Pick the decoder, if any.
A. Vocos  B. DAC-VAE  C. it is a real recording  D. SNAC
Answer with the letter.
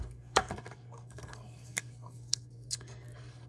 D